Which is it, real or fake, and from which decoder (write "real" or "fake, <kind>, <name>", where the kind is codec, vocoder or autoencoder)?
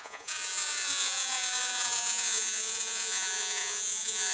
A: fake, vocoder, Vocos